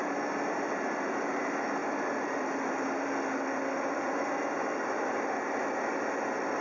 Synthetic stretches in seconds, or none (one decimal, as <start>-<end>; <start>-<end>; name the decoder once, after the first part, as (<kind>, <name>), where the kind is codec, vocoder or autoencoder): 1.8-5.8 (vocoder, BigVGAN v2)